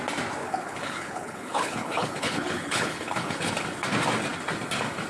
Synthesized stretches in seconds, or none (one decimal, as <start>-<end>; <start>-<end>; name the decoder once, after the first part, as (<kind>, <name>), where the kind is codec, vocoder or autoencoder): 0.4-3.5 (codec, HILCodec)